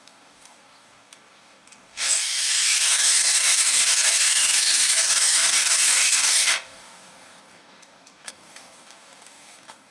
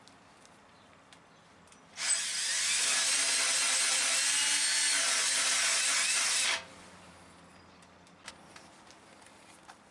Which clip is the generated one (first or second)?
first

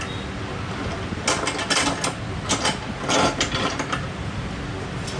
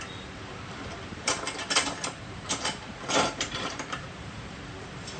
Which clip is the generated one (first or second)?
second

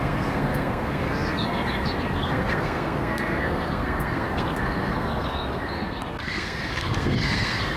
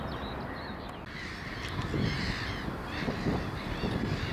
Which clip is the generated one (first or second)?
first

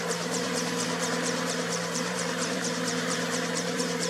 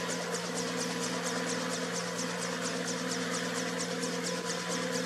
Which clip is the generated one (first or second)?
first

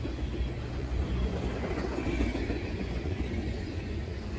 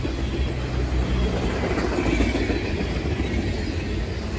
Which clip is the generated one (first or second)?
first